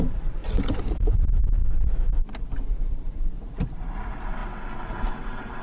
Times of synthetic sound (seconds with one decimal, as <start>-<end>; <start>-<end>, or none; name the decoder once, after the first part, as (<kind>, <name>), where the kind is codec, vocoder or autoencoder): 0.0-0.4 (vocoder, BigVGAN v2); 1.1-1.6; 2.7-4.4; 5.1-5.6